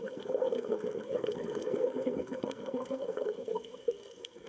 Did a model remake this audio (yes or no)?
yes